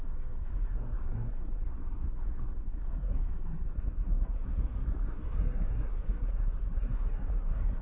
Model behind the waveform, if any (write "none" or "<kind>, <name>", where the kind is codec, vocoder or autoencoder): codec, SNAC